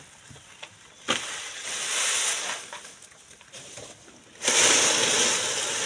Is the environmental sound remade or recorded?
recorded